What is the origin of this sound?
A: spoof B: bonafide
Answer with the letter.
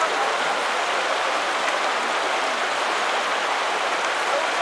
B